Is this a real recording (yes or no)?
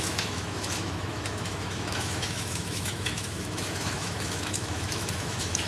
no